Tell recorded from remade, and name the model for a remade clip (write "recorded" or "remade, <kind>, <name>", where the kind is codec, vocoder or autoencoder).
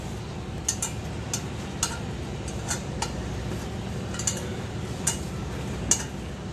recorded